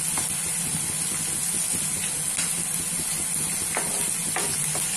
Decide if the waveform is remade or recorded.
recorded